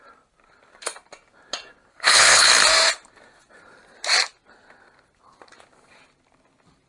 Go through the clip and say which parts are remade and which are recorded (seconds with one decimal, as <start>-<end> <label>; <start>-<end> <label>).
0.0-1.9 recorded; 1.9-2.5 remade; 2.5-6.9 recorded

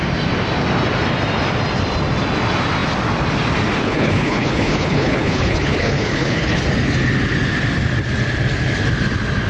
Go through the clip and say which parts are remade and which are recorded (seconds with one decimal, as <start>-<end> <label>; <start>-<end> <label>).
0.0-3.8 recorded; 3.8-6.6 remade; 6.6-9.5 recorded

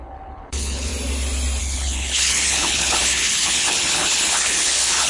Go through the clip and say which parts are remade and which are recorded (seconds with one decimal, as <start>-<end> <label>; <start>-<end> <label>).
0.0-0.9 remade; 0.9-1.6 recorded; 1.6-5.1 remade